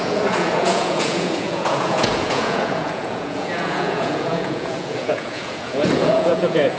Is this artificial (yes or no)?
yes